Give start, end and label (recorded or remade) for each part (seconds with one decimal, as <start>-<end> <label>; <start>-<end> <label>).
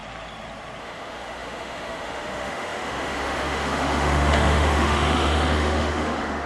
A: 0.0-0.8 recorded; 0.8-6.5 remade